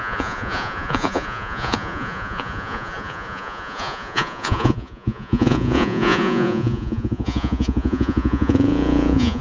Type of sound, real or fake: fake